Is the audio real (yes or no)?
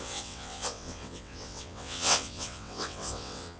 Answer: no